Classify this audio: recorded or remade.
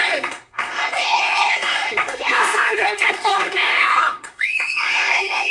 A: remade